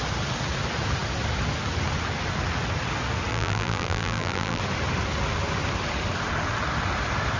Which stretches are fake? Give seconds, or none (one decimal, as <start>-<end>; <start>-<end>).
3.3-4.6

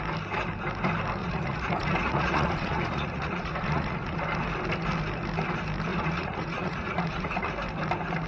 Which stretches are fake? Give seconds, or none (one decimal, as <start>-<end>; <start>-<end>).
1.2-4.2; 5.9-7.5

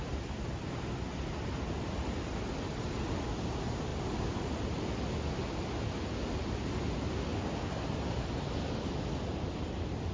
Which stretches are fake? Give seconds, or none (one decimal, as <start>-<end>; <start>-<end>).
none

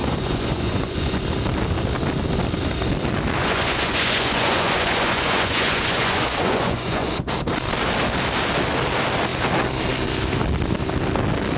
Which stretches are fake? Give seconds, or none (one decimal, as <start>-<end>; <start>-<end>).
0.0-1.2; 3.4-7.2

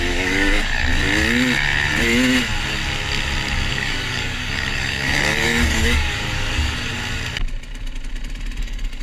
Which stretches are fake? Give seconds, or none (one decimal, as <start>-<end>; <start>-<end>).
0.0-0.9; 3.7-6.9; 8.6-9.0

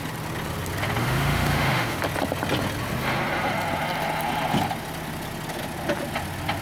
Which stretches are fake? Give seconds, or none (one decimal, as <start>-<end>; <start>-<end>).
1.0-2.0

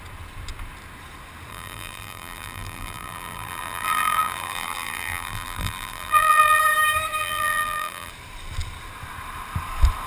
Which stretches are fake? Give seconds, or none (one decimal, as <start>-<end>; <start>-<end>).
1.5-6.6; 7.2-8.1

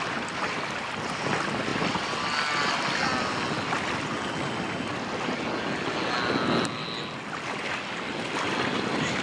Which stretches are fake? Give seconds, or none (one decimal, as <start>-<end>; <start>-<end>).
none